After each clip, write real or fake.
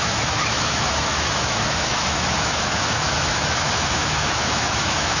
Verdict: fake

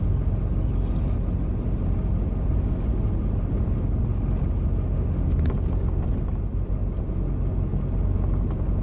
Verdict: real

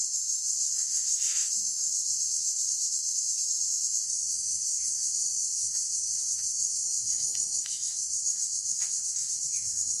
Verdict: fake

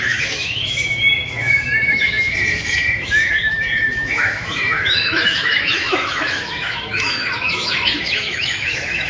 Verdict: fake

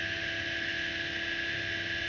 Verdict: real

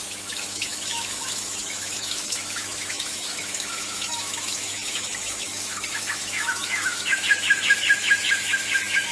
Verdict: fake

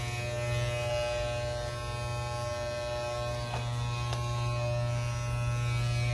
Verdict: real